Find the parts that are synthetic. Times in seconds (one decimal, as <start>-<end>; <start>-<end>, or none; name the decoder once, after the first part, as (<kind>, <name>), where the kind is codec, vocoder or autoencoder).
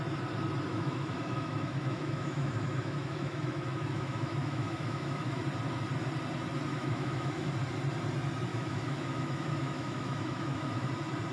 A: 0.7-5.4 (autoencoder, DAC-VAE); 6.7-7.5; 8.5-10.9